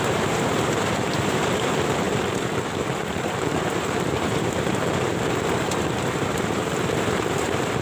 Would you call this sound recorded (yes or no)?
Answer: no